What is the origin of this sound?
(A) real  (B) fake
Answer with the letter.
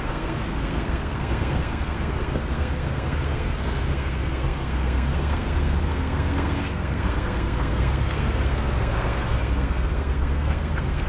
B